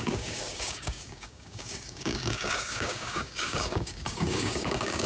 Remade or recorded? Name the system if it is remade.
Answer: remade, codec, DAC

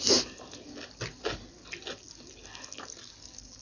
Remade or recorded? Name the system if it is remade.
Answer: recorded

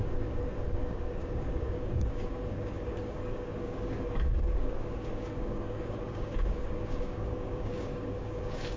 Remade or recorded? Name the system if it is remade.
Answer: remade, codec, DAC